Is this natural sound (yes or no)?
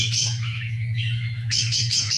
no